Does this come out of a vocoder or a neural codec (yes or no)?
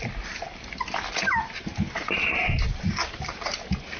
no